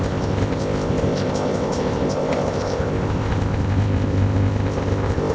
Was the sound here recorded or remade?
remade